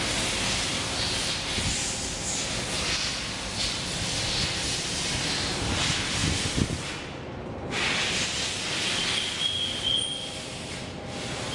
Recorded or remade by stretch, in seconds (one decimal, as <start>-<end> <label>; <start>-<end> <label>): 0.0-11.5 recorded